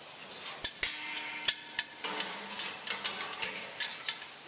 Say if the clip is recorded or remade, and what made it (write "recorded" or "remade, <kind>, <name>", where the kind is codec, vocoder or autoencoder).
recorded